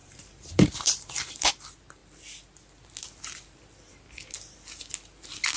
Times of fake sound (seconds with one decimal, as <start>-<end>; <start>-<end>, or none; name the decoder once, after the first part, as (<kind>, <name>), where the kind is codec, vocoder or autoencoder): 0.0-1.5 (vocoder, BigVGAN v2)